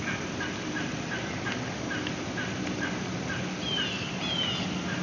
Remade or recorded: recorded